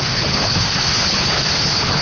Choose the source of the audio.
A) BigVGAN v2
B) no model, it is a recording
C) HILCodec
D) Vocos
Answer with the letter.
C